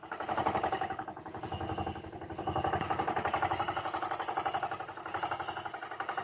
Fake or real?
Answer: real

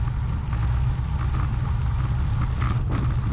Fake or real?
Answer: real